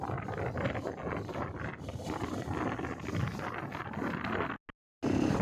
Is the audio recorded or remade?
recorded